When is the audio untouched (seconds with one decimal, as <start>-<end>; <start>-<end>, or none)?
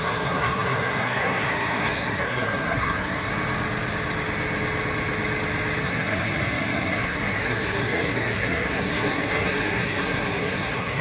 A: 3.3-5.8